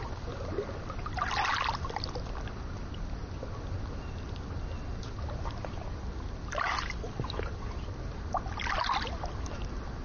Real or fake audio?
real